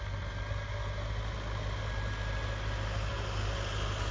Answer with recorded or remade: recorded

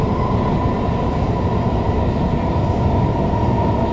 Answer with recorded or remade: recorded